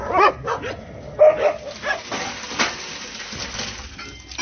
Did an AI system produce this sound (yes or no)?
no